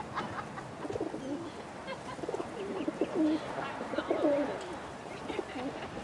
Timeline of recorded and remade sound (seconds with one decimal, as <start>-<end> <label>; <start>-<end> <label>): 0.0-1.8 recorded; 1.8-5.4 remade; 5.4-6.0 recorded